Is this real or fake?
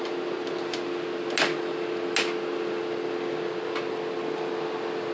real